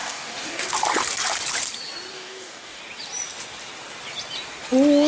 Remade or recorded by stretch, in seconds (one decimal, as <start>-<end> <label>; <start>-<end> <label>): 0.0-0.7 remade; 0.7-2.1 recorded; 2.1-2.8 remade; 2.8-5.1 recorded